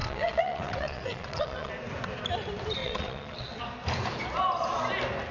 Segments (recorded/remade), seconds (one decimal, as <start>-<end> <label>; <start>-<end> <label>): 0.0-1.7 remade; 1.7-2.8 recorded; 2.8-3.6 remade; 3.6-5.3 recorded